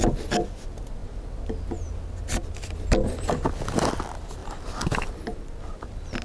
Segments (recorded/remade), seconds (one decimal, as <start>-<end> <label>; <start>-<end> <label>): 0.0-6.2 recorded